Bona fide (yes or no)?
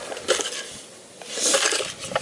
yes